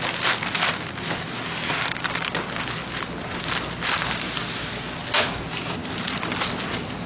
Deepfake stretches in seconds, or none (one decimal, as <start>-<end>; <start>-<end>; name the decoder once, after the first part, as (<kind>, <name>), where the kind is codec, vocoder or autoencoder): none